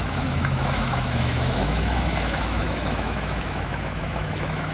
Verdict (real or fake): fake